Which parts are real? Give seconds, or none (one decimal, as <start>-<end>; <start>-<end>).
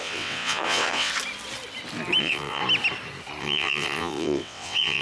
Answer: 1.1-2.2; 2.6-3.4